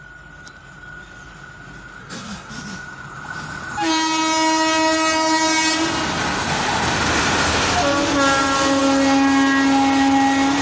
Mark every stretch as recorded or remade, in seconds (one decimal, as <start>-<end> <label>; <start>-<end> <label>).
0.0-2.0 recorded; 2.0-2.5 remade; 2.5-10.6 recorded